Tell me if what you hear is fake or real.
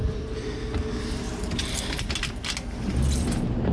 real